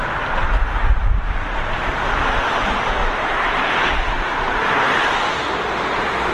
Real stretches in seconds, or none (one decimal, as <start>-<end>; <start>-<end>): 0.0-1.0; 2.0-3.0; 3.5-4.3; 5.7-6.3

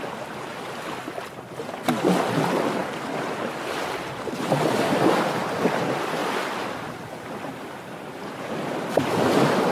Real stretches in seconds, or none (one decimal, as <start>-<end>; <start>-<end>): 0.0-2.8; 3.8-6.2

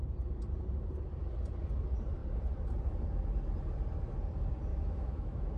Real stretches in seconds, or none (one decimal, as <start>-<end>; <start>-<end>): 0.0-4.7

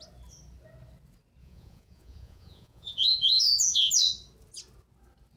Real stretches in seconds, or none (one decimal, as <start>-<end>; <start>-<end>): 0.0-1.4; 3.9-5.4

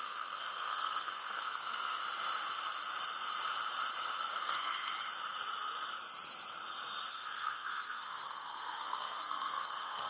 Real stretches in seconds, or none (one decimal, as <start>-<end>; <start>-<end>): 2.0-4.3; 4.9-7.1

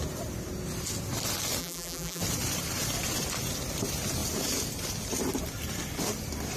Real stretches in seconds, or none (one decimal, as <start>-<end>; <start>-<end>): 0.0-1.6; 2.2-6.6

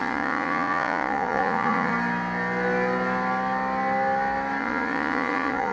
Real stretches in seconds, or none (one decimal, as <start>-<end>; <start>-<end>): 1.9-4.6

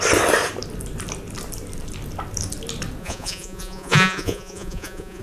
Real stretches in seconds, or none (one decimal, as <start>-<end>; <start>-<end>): 0.0-3.0